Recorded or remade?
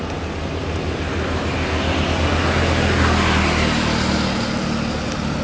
recorded